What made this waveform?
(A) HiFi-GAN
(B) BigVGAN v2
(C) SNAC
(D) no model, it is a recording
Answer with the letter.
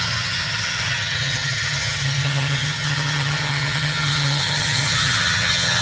A